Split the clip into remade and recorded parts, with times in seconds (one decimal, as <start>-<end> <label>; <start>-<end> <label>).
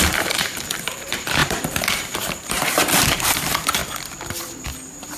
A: 0.0-3.8 remade; 3.8-5.2 recorded